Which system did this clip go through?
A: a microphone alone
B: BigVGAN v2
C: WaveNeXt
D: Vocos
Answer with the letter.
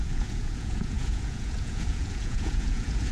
D